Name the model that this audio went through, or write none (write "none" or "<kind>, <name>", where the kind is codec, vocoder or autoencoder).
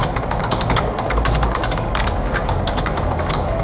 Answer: codec, DAC